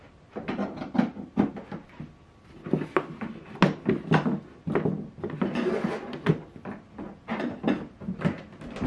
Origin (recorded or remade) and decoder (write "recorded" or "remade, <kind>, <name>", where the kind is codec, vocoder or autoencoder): recorded